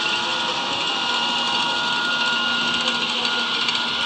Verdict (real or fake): real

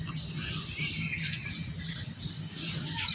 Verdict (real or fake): real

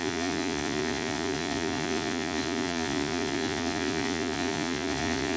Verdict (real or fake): fake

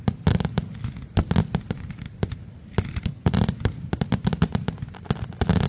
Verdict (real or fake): real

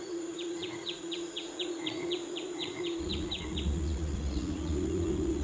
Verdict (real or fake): fake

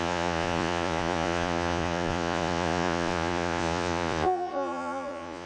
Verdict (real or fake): fake